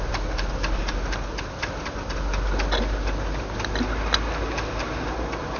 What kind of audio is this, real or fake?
real